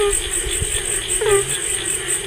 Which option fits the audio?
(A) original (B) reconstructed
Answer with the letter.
A